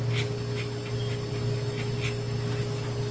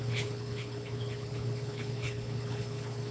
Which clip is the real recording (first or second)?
first